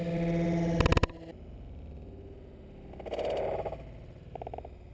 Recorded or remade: recorded